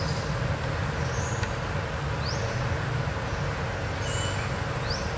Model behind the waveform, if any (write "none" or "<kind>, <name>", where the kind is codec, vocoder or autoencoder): none